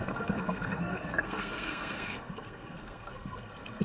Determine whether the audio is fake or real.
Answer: fake